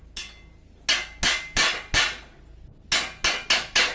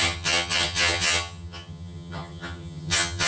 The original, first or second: first